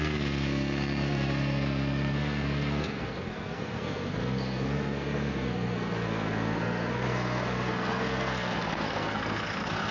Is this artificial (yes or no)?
yes